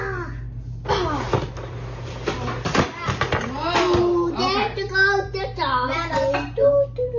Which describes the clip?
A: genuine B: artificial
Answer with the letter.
A